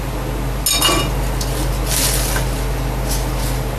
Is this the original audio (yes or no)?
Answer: yes